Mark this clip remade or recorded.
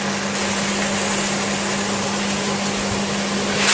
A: recorded